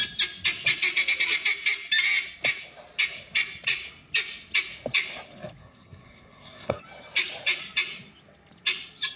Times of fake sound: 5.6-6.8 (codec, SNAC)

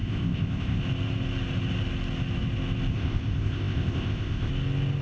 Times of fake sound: 0.0-0.8 (codec, ZipCodec); 2.9-4.5

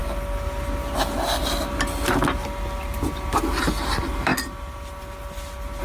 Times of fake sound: 3.5-4.3 (vocoder, BigVGAN v2)

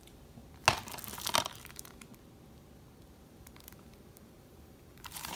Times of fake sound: 0.0-0.4 (vocoder, BigVGAN v2); 1.4-2.1; 3.1-5.4

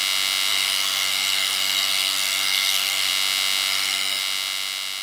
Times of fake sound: 0.5-3.1 (codec, SNAC); 3.7-4.2

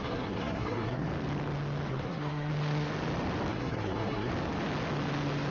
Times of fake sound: 0.0-1.1 (codec, SNAC); 1.9-2.5; 3.5-4.3

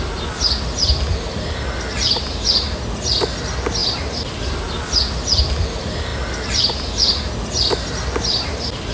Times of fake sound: none